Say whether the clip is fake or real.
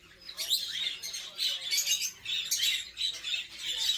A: real